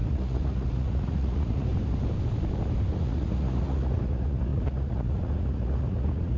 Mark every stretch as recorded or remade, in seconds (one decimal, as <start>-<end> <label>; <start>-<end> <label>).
0.0-1.7 remade; 1.7-2.9 recorded; 2.9-6.4 remade